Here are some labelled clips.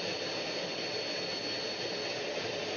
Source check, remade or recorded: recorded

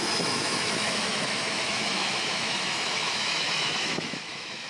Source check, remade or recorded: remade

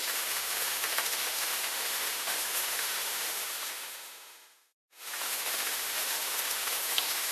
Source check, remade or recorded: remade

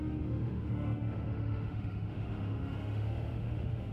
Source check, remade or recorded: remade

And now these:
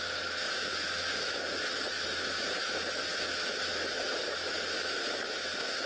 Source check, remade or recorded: remade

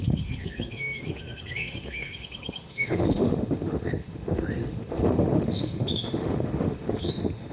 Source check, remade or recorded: remade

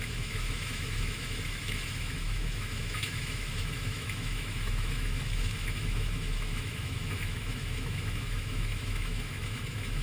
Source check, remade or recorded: remade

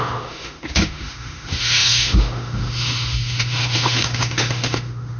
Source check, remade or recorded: remade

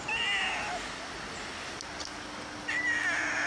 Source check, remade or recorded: recorded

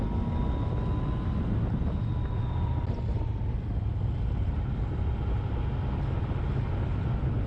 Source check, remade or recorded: recorded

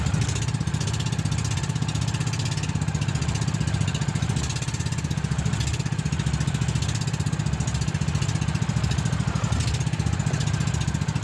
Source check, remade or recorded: recorded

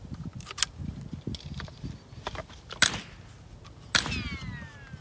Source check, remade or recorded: recorded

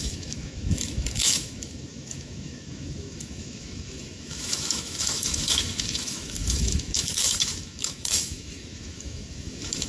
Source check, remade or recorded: remade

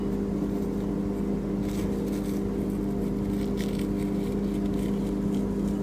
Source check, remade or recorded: recorded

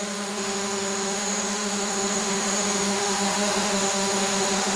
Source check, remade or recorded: remade